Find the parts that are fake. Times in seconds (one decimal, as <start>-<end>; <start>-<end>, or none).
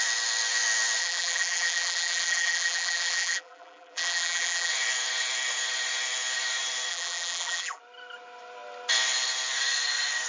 1.0-4.7; 6.9-7.8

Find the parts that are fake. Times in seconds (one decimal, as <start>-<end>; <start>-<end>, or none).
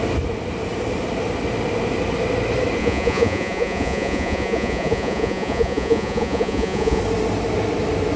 2.8-7.0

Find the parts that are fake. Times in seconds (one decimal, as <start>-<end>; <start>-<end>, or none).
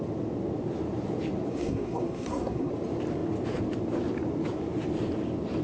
1.5-2.7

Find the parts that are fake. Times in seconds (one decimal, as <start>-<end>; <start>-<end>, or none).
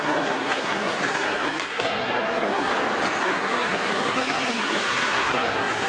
0.0-2.7; 3.2-5.9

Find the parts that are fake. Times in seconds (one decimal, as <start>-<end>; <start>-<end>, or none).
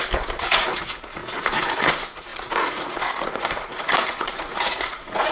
0.5-5.3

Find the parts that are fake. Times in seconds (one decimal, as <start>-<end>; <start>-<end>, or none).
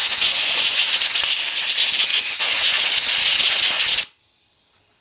0.0-1.2; 2.1-2.8